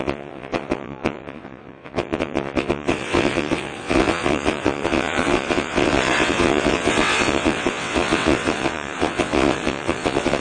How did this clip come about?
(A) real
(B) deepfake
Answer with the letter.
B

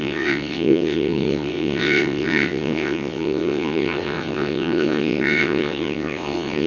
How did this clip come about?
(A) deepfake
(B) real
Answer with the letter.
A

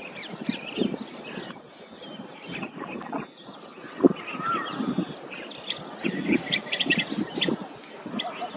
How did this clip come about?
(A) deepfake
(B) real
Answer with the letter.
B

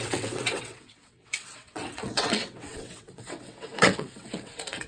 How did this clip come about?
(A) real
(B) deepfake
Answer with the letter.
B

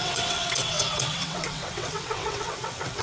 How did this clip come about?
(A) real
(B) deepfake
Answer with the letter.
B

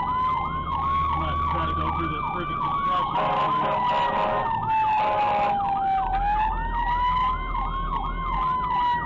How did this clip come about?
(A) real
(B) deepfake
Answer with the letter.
A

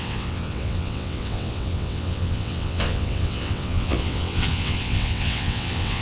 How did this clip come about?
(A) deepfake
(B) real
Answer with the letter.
A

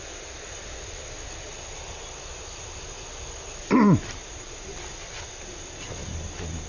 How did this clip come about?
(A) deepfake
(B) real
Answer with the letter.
B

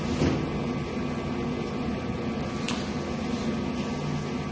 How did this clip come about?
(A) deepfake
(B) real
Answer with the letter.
B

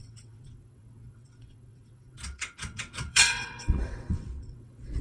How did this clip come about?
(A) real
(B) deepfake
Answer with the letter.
B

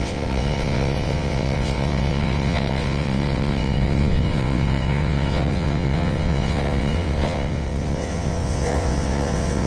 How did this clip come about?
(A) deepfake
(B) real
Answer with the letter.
A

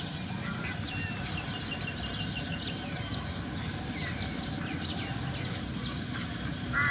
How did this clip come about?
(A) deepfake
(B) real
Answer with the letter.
B